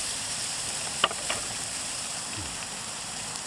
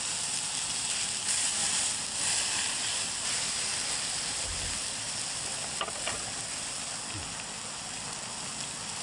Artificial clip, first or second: first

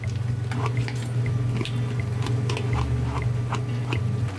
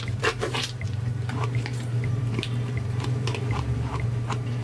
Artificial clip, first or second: second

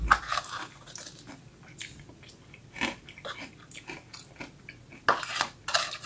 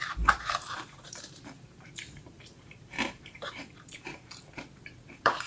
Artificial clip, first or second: second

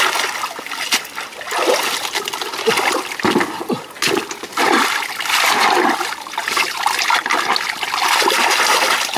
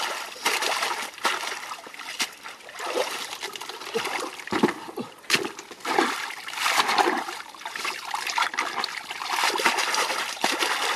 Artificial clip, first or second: second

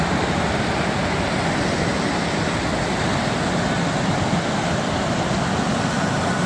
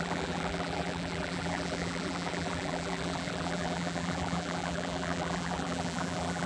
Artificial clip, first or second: second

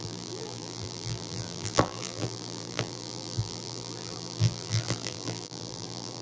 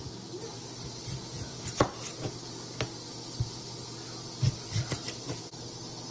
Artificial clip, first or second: first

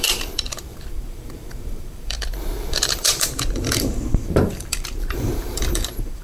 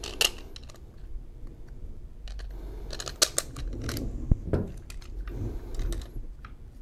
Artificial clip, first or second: first